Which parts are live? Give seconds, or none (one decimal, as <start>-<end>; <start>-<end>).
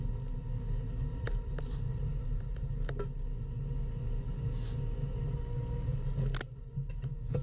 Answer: 0.0-1.1; 2.7-7.4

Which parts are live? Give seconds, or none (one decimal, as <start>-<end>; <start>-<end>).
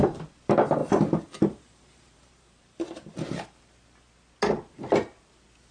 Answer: 0.0-0.8; 3.5-5.7